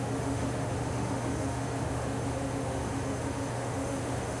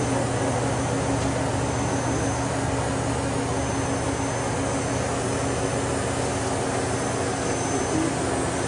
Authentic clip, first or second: second